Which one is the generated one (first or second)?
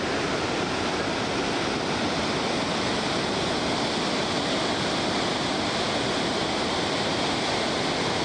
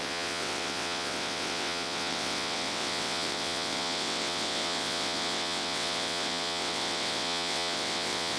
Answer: second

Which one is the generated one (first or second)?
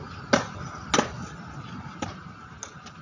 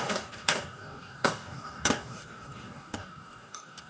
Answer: second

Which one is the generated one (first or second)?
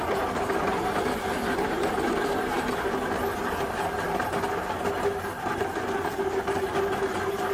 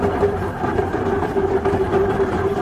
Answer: second